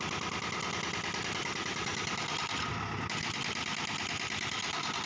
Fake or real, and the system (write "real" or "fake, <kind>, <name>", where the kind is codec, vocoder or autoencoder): real